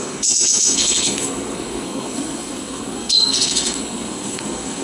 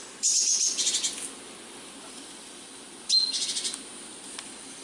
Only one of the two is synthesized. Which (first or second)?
first